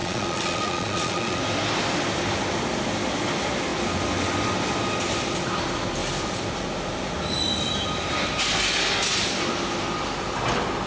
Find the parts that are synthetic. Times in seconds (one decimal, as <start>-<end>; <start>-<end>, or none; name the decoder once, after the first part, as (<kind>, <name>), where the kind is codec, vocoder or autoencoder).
0.0-1.4 (vocoder, Vocos)